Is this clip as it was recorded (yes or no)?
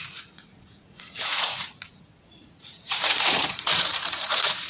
no